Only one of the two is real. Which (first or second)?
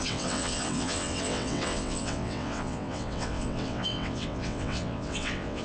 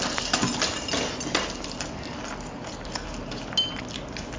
second